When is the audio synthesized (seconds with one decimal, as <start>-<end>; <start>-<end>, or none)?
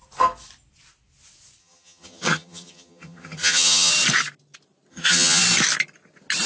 1.6-3.9; 4.9-5.4